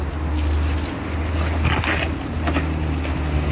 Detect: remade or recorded recorded